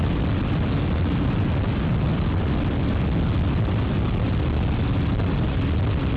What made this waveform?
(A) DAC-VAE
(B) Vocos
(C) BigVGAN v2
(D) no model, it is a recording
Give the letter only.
D